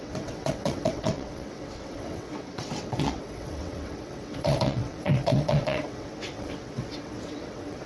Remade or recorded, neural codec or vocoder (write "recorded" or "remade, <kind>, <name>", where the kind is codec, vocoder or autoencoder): remade, vocoder, WaveNeXt